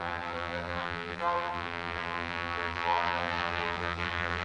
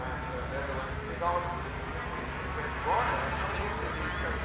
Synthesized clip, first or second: first